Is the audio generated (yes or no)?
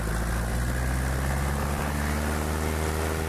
no